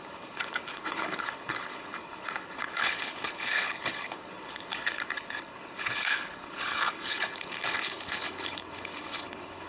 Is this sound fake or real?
fake